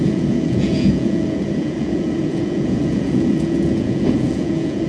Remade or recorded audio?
remade